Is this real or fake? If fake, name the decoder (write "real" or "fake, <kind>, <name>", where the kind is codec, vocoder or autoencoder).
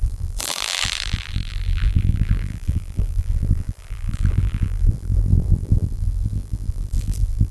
fake, vocoder, BigVGAN v2